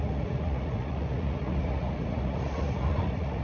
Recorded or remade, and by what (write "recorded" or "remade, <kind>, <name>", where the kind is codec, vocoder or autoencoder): remade, vocoder, Vocos